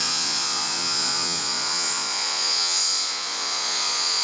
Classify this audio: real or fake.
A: fake